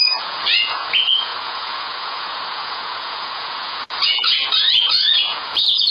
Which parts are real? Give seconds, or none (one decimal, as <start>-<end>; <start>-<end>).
none